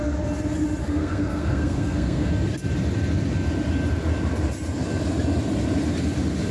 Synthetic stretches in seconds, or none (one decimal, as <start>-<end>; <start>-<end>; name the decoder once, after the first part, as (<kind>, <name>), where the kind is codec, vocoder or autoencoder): 0.8-2.3 (codec, SNAC)